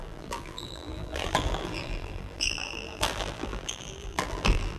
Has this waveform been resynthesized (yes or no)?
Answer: yes